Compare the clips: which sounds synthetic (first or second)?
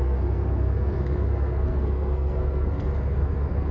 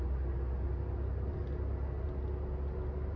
first